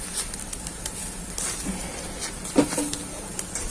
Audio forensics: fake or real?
real